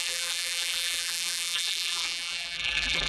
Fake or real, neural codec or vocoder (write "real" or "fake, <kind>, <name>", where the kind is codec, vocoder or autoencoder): fake, vocoder, BigVGAN v2